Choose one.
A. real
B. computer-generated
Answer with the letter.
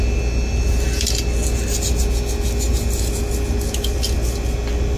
A